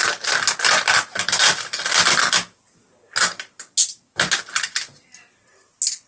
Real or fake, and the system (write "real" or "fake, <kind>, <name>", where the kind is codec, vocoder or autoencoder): real